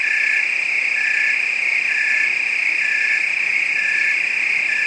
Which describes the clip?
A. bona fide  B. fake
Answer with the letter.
A